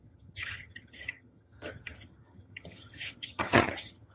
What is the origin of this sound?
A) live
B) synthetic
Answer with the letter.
B